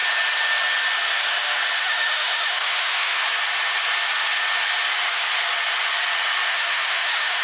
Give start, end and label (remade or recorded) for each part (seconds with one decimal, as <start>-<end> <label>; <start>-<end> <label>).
0.0-1.8 recorded; 1.8-3.2 remade; 3.2-6.5 recorded; 6.5-7.4 remade